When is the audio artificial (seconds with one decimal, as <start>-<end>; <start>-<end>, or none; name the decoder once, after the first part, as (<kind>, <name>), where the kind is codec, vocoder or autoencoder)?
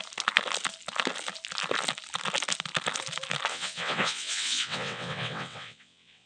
3.5-6.3 (vocoder, WaveNeXt)